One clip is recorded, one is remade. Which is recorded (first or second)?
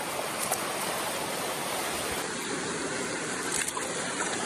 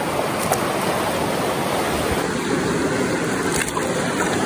second